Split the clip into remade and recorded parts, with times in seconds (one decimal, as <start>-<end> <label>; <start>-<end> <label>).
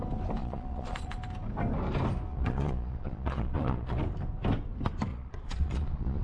0.0-0.4 recorded; 0.4-1.1 remade; 1.1-2.3 recorded; 2.3-4.0 remade; 4.0-5.1 recorded; 5.1-6.2 remade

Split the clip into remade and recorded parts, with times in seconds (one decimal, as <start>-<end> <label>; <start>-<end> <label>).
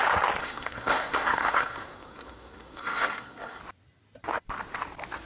0.0-0.4 recorded; 0.4-3.6 remade; 3.6-5.3 recorded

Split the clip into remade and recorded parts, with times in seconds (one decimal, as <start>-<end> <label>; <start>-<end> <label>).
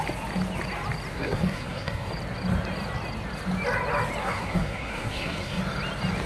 0.0-1.1 recorded; 1.1-2.1 remade; 2.1-4.2 recorded; 4.2-5.6 remade; 5.6-6.3 recorded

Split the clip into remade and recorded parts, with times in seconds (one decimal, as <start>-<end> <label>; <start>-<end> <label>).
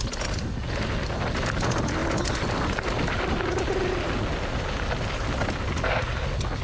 0.0-6.6 recorded